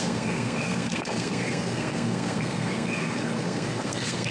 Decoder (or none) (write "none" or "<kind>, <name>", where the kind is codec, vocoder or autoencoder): codec, SNAC